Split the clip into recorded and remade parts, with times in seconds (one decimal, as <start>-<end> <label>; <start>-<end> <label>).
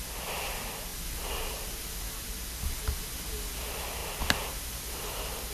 0.0-5.5 recorded